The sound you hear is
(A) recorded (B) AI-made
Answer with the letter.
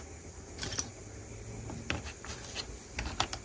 A